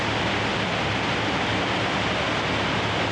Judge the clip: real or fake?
real